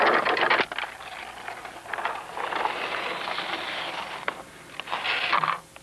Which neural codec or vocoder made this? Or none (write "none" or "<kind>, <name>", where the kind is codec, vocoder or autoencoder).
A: none